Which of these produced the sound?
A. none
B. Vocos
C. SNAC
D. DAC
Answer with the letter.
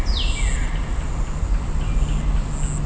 A